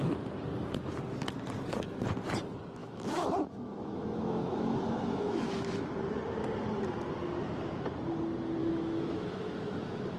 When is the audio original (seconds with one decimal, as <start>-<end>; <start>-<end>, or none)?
0.0-2.8; 5.9-8.6